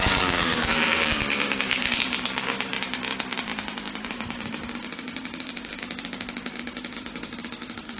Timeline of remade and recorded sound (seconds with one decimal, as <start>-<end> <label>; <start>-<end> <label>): 0.0-2.7 remade; 2.7-4.1 recorded; 4.1-8.0 remade